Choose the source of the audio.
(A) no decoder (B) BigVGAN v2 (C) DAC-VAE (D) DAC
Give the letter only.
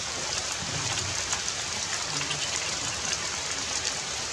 A